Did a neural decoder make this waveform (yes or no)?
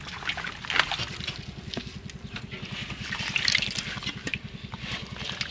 no